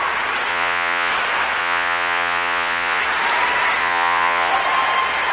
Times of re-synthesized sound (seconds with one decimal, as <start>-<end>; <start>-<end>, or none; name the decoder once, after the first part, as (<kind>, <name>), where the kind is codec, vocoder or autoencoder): 0.5-1.1 (vocoder, Vocos); 1.6-3.0; 3.8-4.5